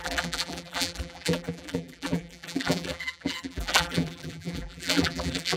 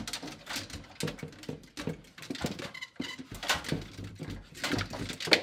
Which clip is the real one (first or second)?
second